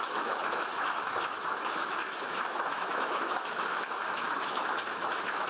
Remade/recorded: remade